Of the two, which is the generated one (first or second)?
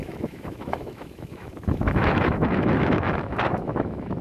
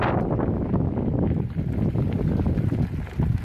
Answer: first